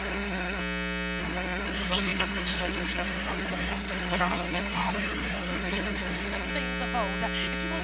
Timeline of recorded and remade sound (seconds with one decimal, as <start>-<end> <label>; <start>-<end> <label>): 0.0-0.6 remade; 0.6-1.2 recorded; 1.2-6.5 remade; 6.5-7.8 recorded